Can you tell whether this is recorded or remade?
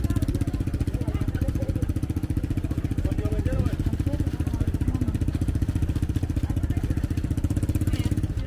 recorded